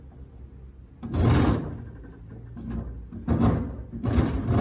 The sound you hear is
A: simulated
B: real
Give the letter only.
B